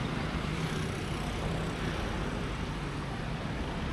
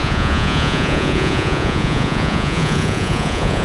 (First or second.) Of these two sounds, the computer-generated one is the second